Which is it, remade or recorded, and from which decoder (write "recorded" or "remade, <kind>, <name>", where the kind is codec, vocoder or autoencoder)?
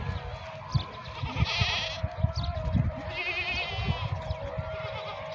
recorded